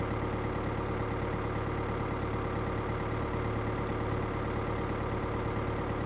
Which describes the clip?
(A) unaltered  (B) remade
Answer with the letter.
A